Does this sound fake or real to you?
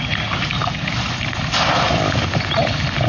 real